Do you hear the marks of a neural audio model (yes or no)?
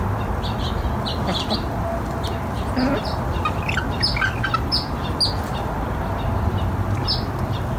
no